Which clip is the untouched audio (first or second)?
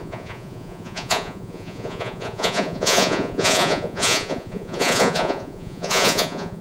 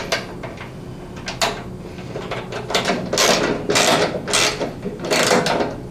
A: second